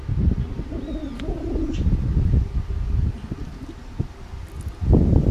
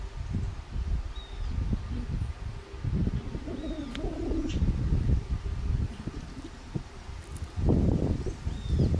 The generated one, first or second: second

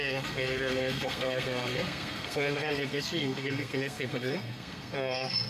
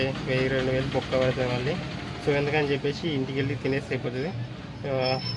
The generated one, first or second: first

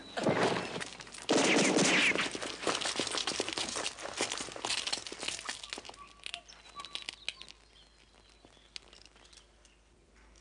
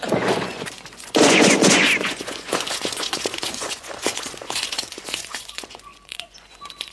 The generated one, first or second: second